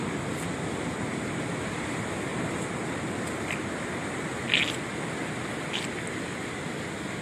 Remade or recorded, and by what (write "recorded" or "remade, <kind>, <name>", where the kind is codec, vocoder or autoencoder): recorded